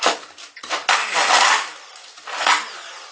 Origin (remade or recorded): recorded